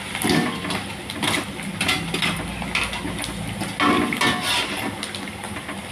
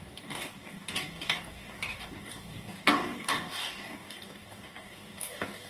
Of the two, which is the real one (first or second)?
first